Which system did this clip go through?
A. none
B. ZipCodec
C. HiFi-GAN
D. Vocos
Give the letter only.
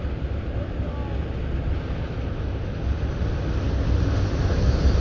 A